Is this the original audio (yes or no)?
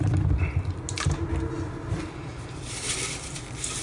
yes